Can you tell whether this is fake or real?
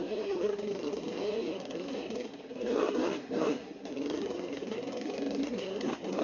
fake